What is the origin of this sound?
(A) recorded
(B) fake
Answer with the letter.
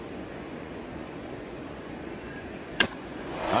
B